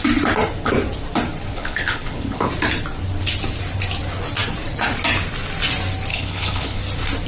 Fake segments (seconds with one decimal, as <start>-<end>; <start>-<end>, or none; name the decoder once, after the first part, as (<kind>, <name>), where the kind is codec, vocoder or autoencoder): 1.5-2.5 (codec, HILCodec); 6.1-6.8